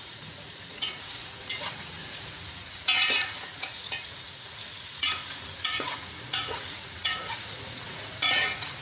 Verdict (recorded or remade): remade